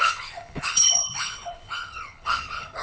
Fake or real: fake